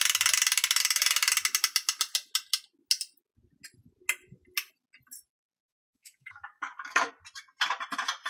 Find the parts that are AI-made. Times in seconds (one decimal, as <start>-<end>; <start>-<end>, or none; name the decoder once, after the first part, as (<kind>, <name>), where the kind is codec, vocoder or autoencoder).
5.6-7.1 (codec, DAC)